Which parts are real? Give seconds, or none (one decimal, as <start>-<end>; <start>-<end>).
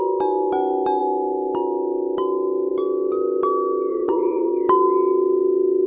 0.0-3.9; 4.5-5.9